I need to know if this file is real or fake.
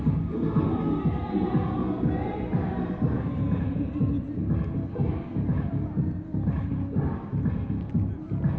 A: real